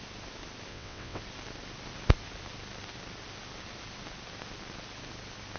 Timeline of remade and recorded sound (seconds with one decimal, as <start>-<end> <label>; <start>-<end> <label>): 0.0-0.7 recorded; 0.7-1.2 remade; 1.2-5.6 recorded